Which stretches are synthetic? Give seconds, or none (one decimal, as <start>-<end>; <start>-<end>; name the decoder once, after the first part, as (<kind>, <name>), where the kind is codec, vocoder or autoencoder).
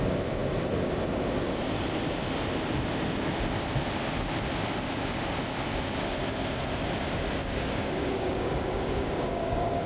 7.4-9.9 (codec, DAC)